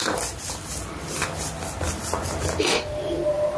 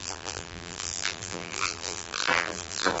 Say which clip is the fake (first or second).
second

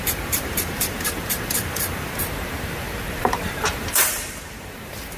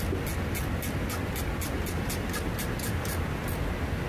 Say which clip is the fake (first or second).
first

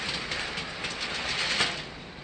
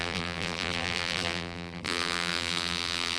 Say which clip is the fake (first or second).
second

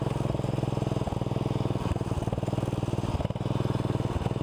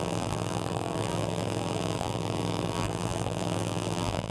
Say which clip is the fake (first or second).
second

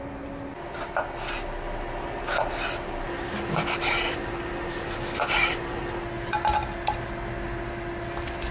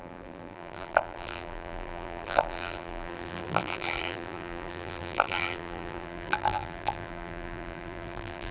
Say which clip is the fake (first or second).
second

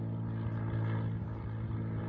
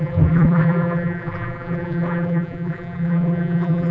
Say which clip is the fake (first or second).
second